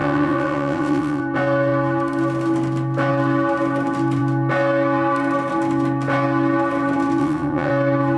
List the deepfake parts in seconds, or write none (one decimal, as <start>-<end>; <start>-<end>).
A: 0.0-1.2; 7.2-7.7